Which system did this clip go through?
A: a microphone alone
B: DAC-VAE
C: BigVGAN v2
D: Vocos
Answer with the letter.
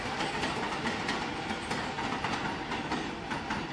A